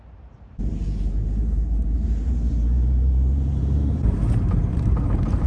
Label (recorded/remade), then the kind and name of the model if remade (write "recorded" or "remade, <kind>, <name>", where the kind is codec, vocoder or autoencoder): remade, vocoder, BigVGAN v2